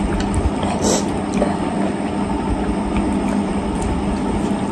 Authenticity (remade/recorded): recorded